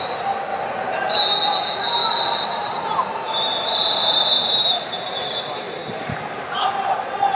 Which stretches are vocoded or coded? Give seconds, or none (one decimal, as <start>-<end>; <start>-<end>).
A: 2.0-6.1

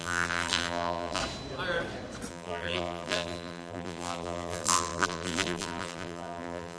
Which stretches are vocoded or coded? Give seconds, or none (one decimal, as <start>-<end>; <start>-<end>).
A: 0.0-1.2; 2.3-6.8

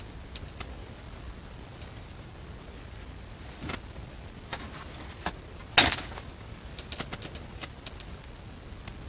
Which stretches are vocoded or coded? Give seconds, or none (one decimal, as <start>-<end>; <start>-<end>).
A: none

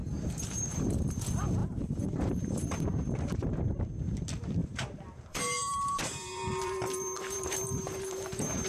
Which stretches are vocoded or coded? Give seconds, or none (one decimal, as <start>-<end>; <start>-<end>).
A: 0.0-1.2; 1.6-3.5; 4.6-8.7